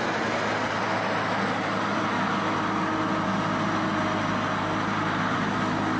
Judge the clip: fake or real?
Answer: real